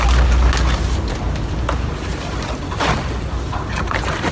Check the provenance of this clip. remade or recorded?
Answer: recorded